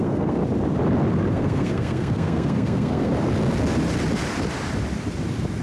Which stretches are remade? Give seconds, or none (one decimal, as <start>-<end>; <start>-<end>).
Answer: 0.0-0.4; 1.3-3.1